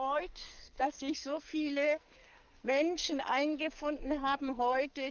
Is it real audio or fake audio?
fake